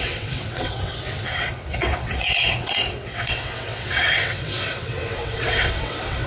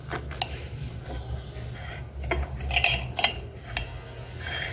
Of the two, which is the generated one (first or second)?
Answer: first